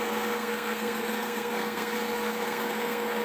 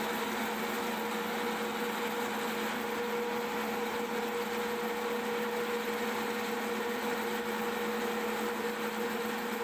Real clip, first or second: second